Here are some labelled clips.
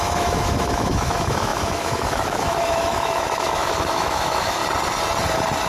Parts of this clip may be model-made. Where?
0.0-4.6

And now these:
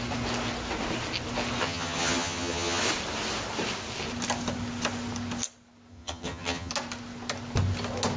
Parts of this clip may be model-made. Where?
1.6-2.8; 5.9-6.7